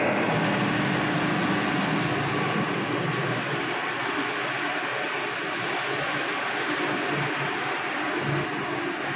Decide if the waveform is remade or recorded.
recorded